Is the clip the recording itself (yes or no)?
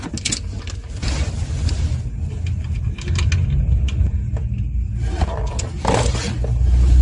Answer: yes